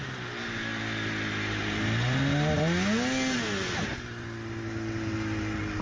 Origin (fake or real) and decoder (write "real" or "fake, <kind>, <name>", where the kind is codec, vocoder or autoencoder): real